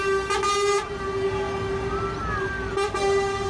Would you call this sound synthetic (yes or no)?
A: no